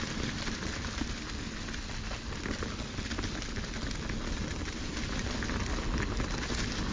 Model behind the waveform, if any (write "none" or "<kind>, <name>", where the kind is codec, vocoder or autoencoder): none